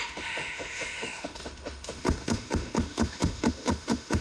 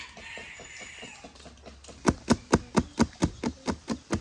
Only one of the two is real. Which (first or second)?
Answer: second